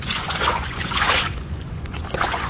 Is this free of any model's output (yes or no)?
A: no